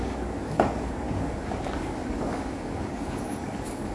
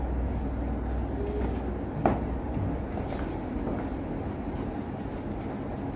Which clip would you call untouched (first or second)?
second